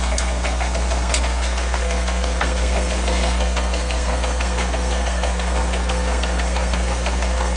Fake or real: fake